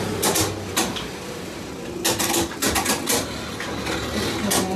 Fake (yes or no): no